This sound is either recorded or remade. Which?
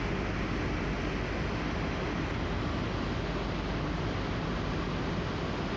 recorded